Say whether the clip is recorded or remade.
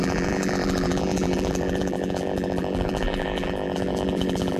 remade